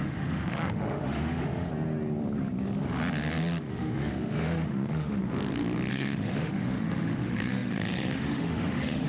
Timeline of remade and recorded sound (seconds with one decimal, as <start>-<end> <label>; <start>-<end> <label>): 0.0-1.7 remade; 1.7-3.7 recorded; 3.7-5.2 remade; 5.2-5.9 recorded; 5.9-9.1 remade